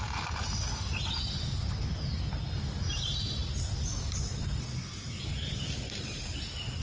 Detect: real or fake real